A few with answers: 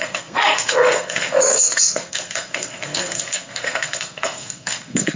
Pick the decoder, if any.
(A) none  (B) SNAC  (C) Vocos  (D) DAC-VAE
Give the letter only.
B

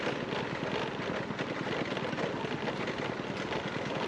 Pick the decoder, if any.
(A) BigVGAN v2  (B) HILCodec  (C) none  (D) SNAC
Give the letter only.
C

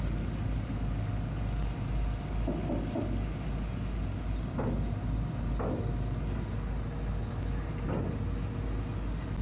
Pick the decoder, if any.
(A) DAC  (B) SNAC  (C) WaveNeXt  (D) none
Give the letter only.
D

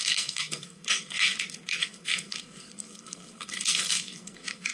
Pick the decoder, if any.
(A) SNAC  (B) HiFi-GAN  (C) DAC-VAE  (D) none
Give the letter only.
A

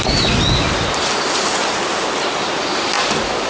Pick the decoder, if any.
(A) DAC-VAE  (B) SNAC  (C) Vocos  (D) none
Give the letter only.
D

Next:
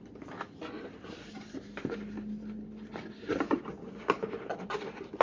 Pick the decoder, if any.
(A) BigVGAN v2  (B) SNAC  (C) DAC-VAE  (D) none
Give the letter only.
D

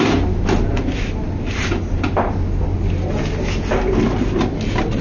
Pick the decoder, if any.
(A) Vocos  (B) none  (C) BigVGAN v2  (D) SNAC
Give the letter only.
B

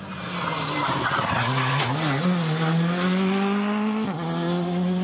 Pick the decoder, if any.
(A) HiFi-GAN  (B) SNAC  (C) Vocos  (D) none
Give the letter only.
D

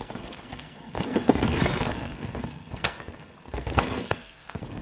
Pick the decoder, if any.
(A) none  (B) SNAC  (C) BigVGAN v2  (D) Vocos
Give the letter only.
B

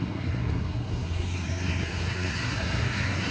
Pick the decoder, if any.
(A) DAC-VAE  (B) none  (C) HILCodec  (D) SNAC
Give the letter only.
D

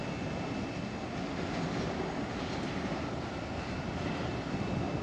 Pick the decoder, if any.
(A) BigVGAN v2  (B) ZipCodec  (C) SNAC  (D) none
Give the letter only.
D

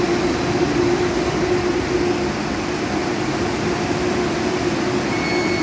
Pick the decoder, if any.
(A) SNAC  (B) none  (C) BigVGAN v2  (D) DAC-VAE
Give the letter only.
B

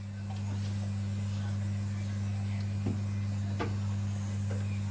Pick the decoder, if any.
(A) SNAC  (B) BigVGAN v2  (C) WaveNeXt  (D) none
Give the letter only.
D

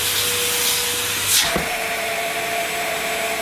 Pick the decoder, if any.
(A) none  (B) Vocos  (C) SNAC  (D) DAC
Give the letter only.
A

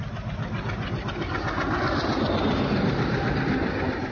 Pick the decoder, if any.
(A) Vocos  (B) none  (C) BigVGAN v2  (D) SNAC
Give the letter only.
B